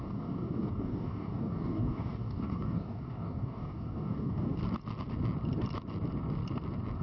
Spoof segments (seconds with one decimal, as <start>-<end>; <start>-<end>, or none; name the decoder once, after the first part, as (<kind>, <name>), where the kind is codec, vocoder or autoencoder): 0.0-4.6 (codec, DAC)